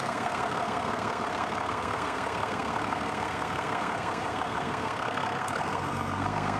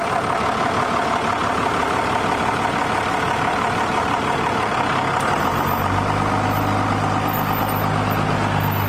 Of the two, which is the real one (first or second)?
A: second